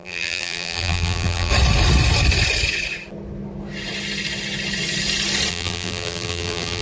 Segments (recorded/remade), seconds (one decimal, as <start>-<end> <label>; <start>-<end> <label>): 0.0-1.5 remade; 1.5-5.5 recorded; 5.5-6.8 remade